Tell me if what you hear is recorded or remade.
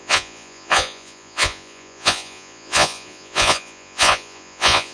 remade